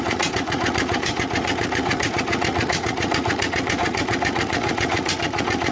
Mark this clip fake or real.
fake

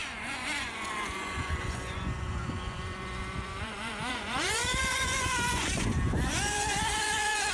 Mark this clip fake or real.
fake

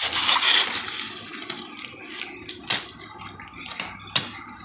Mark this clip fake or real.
real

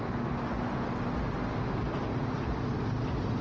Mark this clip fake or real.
real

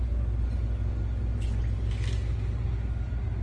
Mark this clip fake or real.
real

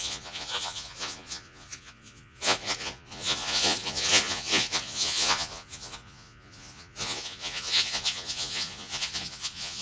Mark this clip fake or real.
fake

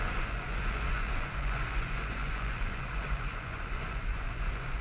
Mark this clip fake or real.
fake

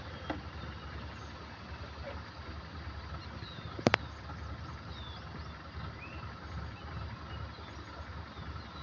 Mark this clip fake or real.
real